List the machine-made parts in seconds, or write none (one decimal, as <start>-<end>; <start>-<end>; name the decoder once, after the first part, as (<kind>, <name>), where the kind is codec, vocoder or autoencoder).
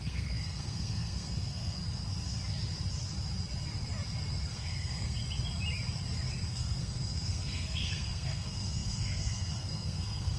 0.0-1.8 (codec, SNAC); 4.5-5.2; 6.5-10.4